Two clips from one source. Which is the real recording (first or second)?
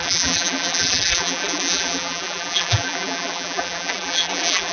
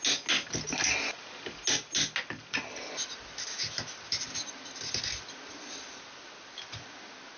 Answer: second